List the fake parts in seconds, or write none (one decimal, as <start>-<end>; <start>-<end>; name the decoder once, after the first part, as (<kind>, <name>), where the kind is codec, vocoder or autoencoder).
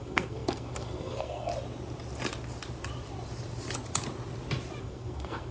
0.0-1.5 (codec, SNAC); 4.8-5.5